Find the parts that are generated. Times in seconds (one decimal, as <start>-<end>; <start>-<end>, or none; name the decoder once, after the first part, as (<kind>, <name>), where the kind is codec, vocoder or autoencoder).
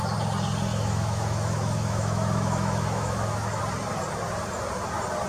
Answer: 0.7-3.6 (autoencoder, DAC-VAE)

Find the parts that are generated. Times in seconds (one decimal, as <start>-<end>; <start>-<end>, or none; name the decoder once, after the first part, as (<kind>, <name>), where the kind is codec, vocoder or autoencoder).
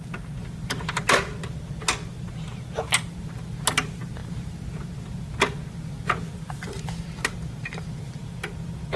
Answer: none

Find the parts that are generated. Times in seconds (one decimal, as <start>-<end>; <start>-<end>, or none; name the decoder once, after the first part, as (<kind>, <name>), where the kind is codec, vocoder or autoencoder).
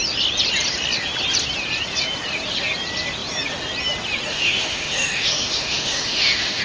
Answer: 4.3-6.6 (autoencoder, DAC-VAE)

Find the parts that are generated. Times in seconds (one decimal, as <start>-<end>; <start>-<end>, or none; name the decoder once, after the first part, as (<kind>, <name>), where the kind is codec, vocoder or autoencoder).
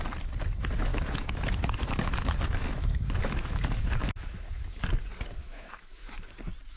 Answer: 0.9-4.8 (autoencoder, DAC-VAE); 5.4-6.1